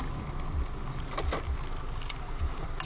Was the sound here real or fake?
real